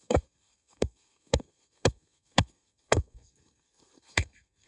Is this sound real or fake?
fake